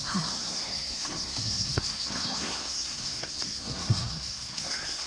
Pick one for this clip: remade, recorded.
remade